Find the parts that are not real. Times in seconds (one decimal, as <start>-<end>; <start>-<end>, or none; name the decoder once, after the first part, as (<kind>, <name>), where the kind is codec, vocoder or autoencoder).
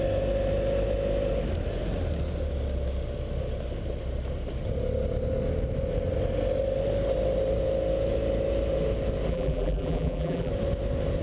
9.3-10.5 (vocoder, BigVGAN v2)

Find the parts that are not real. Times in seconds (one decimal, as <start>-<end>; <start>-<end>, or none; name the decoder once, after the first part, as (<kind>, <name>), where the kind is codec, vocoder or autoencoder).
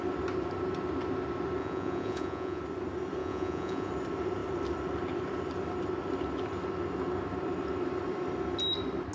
1.6-2.6 (vocoder, Vocos); 3.2-3.9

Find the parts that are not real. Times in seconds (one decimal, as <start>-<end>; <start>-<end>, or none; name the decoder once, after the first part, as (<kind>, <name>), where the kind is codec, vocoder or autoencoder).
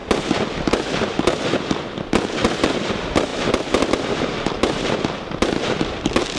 none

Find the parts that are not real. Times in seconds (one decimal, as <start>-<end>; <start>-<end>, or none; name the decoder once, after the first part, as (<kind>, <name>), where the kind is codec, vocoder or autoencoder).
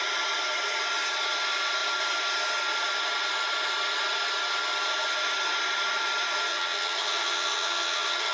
6.5-8.3 (vocoder, HiFi-GAN)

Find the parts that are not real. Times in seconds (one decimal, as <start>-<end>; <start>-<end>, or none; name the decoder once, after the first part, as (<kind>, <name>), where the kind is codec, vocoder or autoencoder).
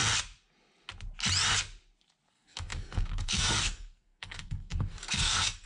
2.3-5.7 (codec, SNAC)